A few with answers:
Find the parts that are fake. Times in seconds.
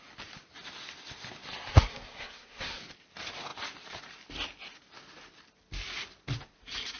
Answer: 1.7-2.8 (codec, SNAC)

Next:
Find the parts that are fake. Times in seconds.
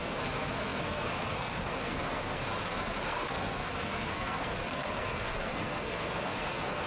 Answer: 0.0-6.9 (codec, SNAC)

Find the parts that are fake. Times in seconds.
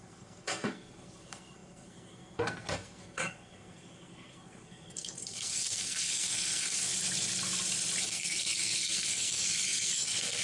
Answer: 0.0-6.9 (codec, SNAC); 8.0-10.4